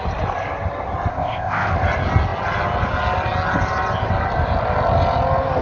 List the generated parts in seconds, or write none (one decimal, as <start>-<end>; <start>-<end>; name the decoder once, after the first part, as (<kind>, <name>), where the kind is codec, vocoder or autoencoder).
1.1-1.7 (codec, ZipCodec)